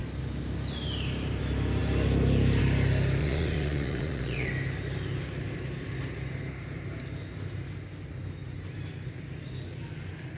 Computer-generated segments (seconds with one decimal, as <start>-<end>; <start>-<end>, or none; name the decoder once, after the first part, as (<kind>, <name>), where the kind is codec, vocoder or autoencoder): 3.2-4.5 (vocoder, Vocos)